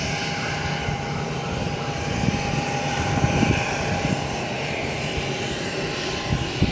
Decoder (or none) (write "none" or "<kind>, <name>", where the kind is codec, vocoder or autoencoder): none